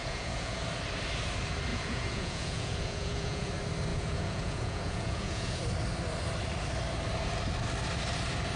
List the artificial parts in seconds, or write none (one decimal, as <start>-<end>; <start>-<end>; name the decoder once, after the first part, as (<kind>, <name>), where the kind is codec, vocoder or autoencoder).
0.0-0.6 (vocoder, Vocos); 1.7-3.5; 3.9-5.6